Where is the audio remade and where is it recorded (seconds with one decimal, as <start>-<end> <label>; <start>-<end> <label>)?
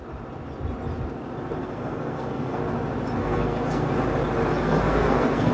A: 0.0-1.6 recorded; 1.6-2.6 remade; 2.6-3.2 recorded; 3.2-3.9 remade; 3.9-4.5 recorded; 4.5-5.5 remade